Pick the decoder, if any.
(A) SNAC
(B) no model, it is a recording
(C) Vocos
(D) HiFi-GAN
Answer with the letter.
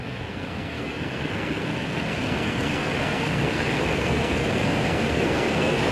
A